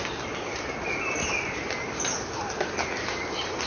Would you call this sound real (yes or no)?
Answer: yes